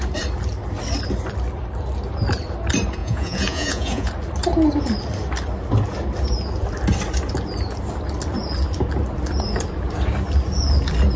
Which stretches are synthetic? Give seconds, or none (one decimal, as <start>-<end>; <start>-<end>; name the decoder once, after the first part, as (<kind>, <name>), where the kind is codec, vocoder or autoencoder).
3.0-4.1 (vocoder, Vocos)